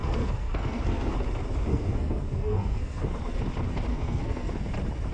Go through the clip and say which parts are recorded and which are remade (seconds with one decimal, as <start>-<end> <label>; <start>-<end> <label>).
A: 0.0-1.1 remade; 1.1-1.7 recorded; 1.7-3.4 remade; 3.4-3.9 recorded; 3.9-4.5 remade; 4.5-5.1 recorded